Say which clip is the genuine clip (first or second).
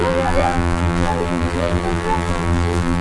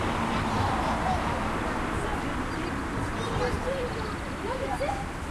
second